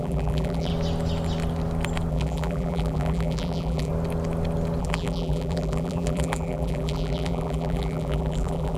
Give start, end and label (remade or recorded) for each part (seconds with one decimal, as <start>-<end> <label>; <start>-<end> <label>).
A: 0.0-0.7 remade; 0.7-2.1 recorded; 2.1-3.9 remade; 3.9-4.8 recorded; 4.8-8.8 remade